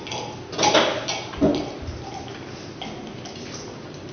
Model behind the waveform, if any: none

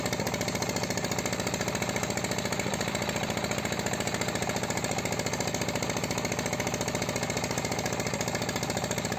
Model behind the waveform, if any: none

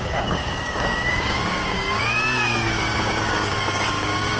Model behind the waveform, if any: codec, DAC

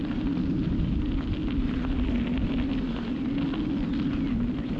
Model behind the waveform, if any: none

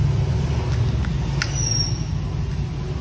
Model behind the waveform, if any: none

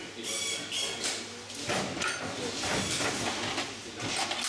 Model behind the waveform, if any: none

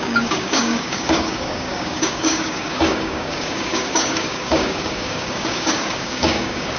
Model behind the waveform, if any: codec, DAC